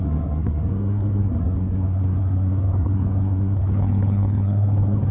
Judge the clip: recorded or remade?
remade